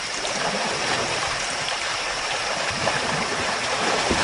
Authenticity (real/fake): fake